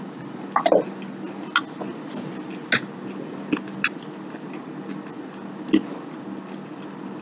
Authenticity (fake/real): real